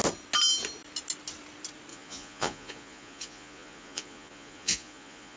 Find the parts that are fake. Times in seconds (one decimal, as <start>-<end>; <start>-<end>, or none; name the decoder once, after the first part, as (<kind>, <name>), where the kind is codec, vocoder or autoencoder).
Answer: 1.9-5.4 (vocoder, Vocos)